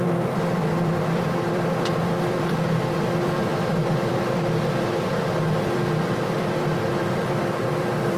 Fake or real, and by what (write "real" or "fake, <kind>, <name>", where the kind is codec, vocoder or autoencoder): fake, vocoder, BigVGAN v2